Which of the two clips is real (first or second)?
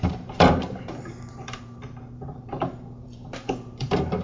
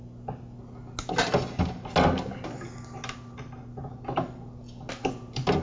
second